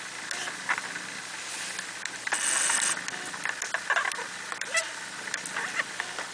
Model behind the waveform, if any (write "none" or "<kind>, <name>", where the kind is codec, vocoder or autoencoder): none